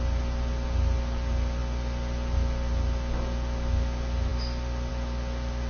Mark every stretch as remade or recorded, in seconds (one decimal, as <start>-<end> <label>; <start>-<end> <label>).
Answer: 0.0-5.7 recorded